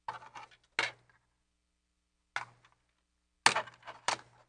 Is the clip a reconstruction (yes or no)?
no